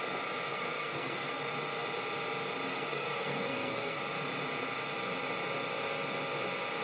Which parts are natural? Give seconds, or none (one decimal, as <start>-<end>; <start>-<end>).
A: 0.0-0.5; 1.4-2.7; 4.0-6.8